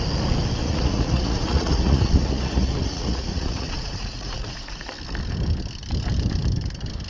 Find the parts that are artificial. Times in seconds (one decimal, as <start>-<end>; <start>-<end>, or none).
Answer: 0.6-4.9